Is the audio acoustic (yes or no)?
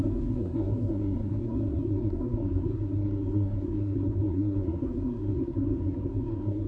no